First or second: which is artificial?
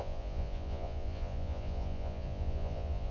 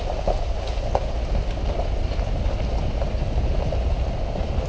first